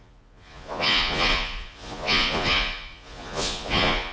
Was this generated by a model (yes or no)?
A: yes